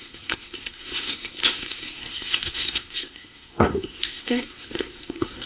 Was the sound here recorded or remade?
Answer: remade